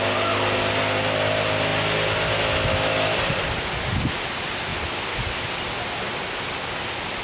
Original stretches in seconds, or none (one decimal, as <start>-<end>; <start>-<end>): 0.0-7.2